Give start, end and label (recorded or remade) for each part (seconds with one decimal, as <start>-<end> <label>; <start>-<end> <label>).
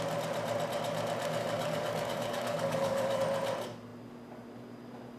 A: 0.0-1.4 recorded; 1.4-3.2 remade; 3.2-5.2 recorded